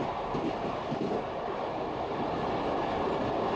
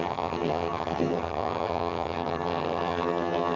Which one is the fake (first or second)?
second